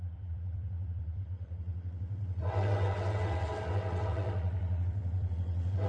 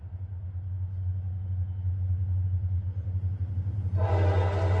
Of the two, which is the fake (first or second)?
first